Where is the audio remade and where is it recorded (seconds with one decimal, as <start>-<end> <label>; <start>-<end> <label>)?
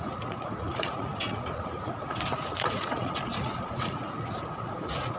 0.0-5.2 remade